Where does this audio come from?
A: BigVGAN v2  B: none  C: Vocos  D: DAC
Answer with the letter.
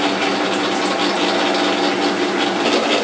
B